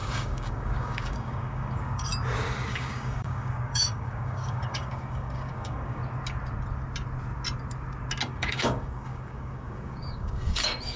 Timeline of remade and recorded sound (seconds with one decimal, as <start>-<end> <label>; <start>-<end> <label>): 0.0-2.1 remade; 2.1-2.7 recorded; 2.7-6.0 remade; 6.0-8.3 recorded; 8.3-11.0 remade